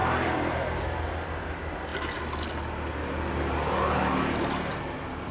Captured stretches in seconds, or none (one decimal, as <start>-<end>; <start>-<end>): 0.0-5.3